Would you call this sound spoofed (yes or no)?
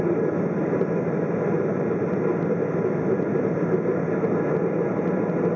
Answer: no